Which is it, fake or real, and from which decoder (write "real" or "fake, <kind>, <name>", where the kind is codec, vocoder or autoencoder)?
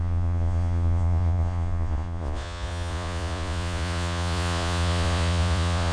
fake, vocoder, Vocos